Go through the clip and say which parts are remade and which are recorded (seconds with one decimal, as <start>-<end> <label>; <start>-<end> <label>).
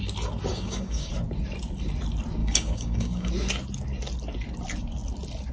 0.0-0.5 recorded; 0.5-1.1 remade; 1.1-2.4 recorded; 2.4-3.3 remade; 3.3-5.5 recorded